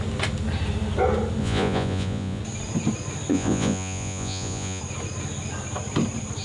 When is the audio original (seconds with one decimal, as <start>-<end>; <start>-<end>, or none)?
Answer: 0.0-1.4; 2.4-3.3; 4.8-6.4